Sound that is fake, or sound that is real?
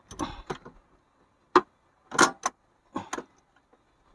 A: real